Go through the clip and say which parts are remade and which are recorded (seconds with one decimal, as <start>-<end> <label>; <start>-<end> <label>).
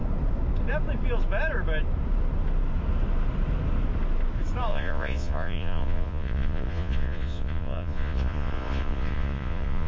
0.0-4.7 recorded; 4.7-9.9 remade